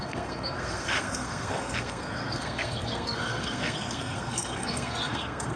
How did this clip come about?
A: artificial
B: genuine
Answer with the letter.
A